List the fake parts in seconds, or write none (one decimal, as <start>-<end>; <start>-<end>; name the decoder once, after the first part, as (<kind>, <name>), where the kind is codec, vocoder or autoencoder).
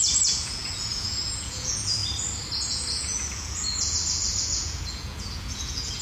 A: 0.0-2.0 (vocoder, Vocos); 2.7-6.0